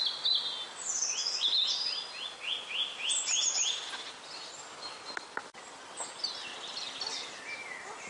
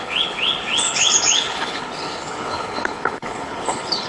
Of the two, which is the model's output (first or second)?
second